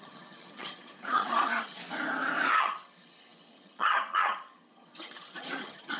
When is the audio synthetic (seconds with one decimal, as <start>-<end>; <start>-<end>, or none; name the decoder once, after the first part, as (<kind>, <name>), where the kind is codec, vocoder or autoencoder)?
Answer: 0.0-1.8 (vocoder, HiFi-GAN); 2.5-6.0